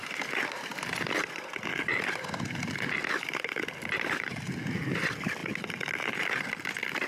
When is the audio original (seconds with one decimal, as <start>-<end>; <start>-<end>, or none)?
0.0-7.1